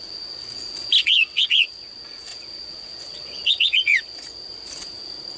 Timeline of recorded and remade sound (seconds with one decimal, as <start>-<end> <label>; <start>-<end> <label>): 0.0-1.0 recorded; 1.0-1.6 remade; 1.6-2.3 recorded; 2.3-4.3 remade; 4.3-5.4 recorded